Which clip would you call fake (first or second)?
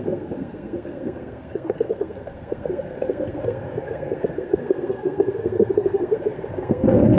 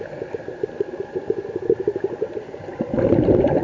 first